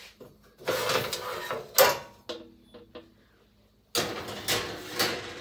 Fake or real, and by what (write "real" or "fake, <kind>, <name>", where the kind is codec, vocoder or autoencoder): real